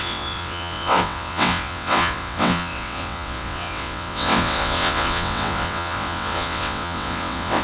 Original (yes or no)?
no